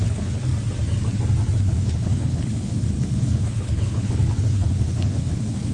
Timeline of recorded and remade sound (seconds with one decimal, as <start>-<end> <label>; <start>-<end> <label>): 0.0-0.5 remade; 0.5-1.6 recorded; 1.6-5.7 remade